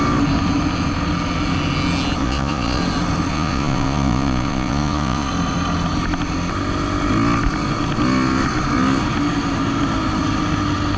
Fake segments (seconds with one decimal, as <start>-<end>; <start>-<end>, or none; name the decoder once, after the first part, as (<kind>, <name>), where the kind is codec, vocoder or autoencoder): 2.2-2.8 (vocoder, Vocos); 3.3-5.3